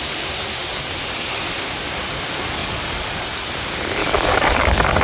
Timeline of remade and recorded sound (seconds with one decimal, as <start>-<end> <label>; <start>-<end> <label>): 0.0-2.6 recorded; 2.6-3.4 remade; 3.4-4.0 recorded; 4.0-5.0 remade

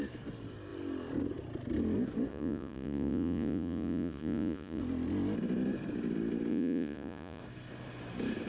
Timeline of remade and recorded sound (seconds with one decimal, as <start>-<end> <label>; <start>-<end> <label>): 0.0-2.3 recorded; 2.3-4.8 remade; 4.8-6.5 recorded; 6.5-7.4 remade; 7.4-8.5 recorded

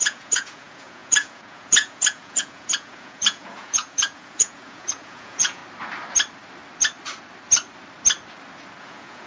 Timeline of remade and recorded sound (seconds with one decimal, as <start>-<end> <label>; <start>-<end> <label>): 0.0-5.6 remade; 5.6-8.8 recorded; 8.8-9.3 remade

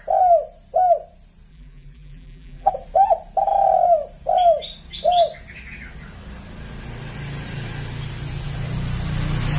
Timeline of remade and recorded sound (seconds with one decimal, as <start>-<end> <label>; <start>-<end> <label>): 0.0-1.5 recorded; 1.5-2.7 remade; 2.7-9.6 recorded

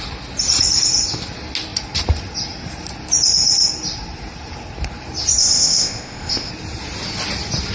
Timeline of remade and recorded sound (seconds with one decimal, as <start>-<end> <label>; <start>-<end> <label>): 0.0-5.4 recorded; 5.4-6.5 remade; 6.5-7.7 recorded

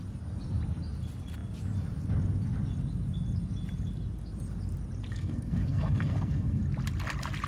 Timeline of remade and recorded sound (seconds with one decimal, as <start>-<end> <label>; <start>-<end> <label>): 0.0-5.1 recorded; 5.1-6.6 remade; 6.6-7.5 recorded

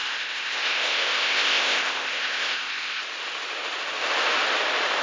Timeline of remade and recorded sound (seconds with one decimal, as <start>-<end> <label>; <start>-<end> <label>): 0.0-3.0 remade; 3.0-5.0 recorded

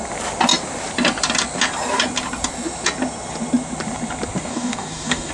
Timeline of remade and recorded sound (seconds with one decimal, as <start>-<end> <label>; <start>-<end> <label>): 0.0-4.5 recorded; 4.5-5.3 remade